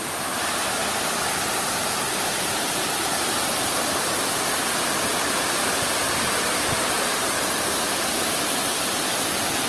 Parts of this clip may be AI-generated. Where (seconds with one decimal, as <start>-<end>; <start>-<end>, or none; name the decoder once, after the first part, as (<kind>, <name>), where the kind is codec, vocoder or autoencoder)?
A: 0.8-3.7 (vocoder, BigVGAN v2)